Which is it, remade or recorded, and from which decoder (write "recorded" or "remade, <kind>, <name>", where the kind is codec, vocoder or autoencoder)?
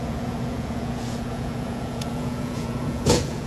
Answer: remade, vocoder, Vocos